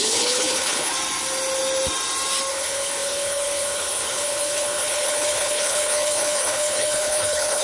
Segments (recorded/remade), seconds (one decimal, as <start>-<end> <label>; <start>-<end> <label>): 0.0-0.9 remade; 0.9-2.5 recorded; 2.5-7.6 remade